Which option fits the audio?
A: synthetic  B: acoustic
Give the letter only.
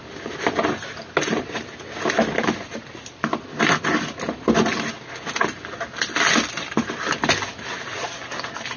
B